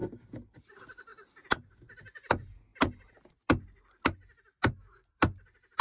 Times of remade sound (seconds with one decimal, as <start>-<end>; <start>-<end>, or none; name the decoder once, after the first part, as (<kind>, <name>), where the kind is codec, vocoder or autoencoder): none

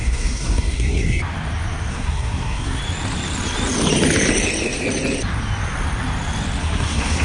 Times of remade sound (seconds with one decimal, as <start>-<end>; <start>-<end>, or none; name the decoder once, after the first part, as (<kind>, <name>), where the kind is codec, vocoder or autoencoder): 0.0-1.2 (codec, SNAC); 1.9-2.8; 6.6-7.2

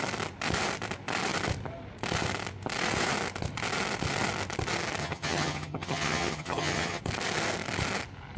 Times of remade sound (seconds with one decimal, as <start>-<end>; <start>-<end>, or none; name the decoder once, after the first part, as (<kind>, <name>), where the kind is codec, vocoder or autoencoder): 5.0-7.0 (vocoder, HiFi-GAN)